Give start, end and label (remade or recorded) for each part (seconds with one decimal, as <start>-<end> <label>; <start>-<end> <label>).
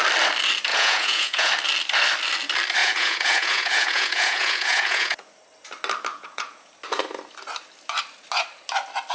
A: 0.0-0.7 recorded; 0.7-1.5 remade; 1.5-2.8 recorded; 2.8-5.3 remade; 5.3-6.1 recorded; 6.1-6.7 remade; 6.7-9.1 recorded